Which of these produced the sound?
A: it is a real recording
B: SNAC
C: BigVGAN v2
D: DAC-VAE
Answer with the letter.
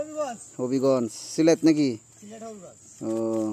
A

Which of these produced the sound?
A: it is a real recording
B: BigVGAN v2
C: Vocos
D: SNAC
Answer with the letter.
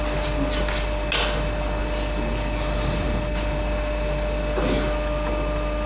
A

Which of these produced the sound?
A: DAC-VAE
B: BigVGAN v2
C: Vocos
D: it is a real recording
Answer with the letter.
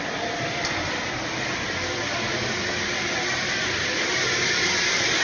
D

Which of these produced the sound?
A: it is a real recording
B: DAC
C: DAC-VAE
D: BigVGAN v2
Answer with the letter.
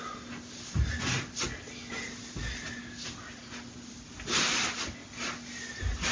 A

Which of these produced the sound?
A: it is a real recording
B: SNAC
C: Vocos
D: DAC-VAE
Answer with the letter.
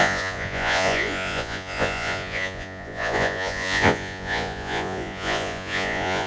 C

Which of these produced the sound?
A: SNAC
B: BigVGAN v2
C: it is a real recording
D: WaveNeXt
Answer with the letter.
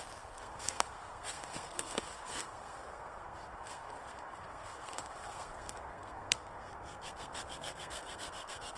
A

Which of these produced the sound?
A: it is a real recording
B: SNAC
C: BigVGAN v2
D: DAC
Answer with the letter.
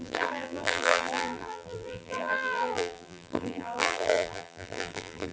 C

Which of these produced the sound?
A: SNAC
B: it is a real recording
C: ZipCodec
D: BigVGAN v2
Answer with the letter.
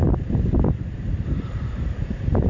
D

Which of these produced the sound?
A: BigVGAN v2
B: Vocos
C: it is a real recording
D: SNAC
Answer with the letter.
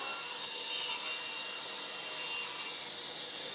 C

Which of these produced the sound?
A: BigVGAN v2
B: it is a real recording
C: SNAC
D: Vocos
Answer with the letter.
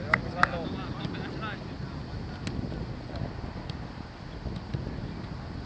B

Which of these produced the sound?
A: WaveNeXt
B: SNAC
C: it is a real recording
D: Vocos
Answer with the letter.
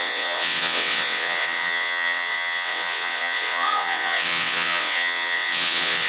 A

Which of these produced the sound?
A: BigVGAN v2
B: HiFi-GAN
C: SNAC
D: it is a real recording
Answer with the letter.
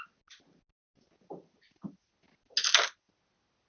D